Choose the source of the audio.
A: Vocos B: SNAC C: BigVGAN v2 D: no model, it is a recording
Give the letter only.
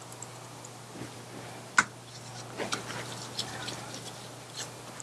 D